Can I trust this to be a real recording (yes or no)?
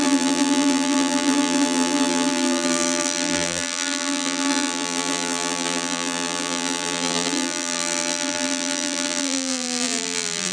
no